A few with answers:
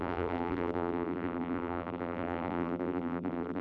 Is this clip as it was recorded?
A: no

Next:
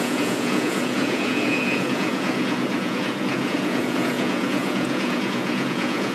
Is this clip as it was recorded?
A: no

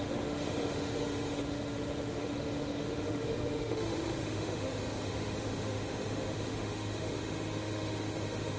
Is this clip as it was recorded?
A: no